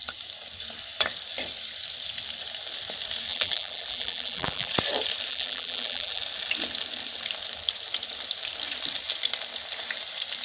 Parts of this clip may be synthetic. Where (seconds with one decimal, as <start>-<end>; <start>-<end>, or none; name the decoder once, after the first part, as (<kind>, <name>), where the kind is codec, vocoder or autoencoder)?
3.3-4.7 (vocoder, BigVGAN v2); 5.3-6.2